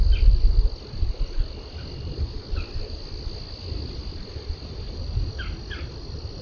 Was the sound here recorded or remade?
recorded